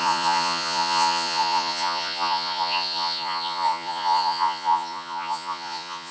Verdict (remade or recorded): remade